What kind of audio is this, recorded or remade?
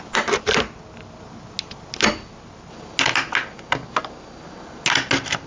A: recorded